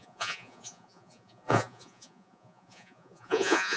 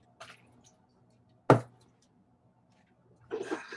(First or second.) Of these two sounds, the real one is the second